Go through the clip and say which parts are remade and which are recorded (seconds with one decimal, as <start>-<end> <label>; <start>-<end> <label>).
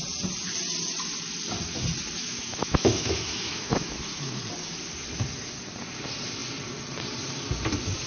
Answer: 0.0-2.2 recorded; 2.2-4.4 remade; 4.4-8.1 recorded